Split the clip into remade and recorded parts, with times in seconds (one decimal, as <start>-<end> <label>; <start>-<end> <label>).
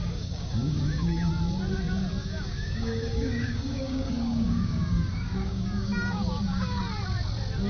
0.0-1.3 remade; 1.3-2.2 recorded; 2.2-6.8 remade; 6.8-7.7 recorded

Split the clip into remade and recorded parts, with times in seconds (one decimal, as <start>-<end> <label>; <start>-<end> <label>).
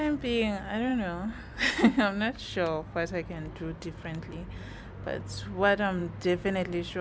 0.0-7.0 recorded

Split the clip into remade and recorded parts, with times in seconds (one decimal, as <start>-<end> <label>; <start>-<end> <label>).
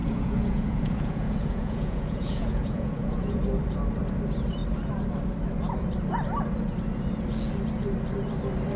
0.0-3.4 remade; 3.4-8.8 recorded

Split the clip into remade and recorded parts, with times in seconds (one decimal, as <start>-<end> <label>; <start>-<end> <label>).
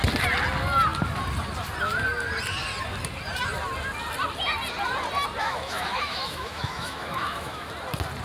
0.0-5.4 recorded; 5.4-7.7 remade; 7.7-8.2 recorded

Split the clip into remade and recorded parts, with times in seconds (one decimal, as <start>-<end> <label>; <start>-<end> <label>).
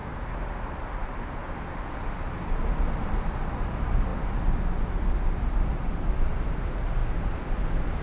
0.0-8.0 recorded